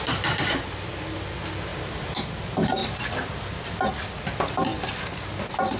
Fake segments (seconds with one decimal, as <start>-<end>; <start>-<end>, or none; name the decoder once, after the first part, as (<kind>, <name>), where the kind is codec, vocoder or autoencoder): none